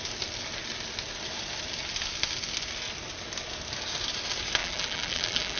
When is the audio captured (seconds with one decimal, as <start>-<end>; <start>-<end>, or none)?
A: 0.0-4.6